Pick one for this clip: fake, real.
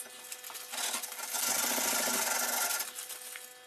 real